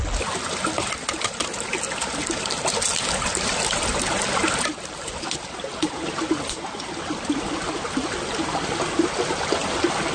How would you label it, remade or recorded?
recorded